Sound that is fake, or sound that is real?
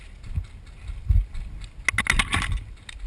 real